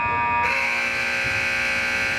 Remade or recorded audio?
recorded